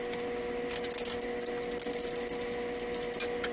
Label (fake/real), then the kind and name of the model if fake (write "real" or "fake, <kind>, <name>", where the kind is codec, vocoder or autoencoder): real